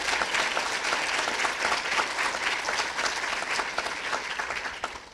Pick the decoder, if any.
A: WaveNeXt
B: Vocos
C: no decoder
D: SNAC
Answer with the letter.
C